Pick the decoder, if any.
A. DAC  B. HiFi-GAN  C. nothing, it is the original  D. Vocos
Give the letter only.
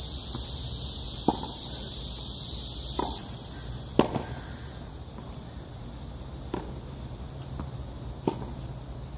C